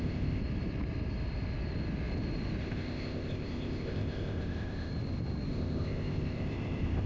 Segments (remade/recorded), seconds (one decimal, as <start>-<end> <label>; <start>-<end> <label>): 0.0-0.4 remade; 0.4-2.6 recorded; 2.6-4.9 remade; 4.9-5.5 recorded; 5.5-7.1 remade